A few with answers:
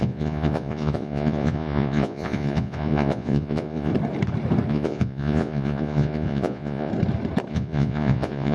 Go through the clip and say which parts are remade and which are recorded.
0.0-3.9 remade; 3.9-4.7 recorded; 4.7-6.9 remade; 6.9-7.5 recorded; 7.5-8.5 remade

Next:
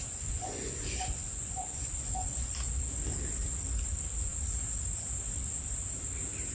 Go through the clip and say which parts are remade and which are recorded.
0.0-2.5 remade; 2.5-6.5 recorded

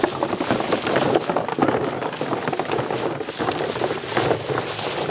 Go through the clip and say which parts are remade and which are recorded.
0.0-5.1 recorded

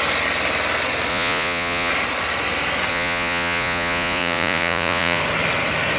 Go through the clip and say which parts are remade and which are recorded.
0.0-1.1 recorded; 1.1-1.9 remade; 1.9-2.9 recorded; 2.9-5.2 remade; 5.2-6.0 recorded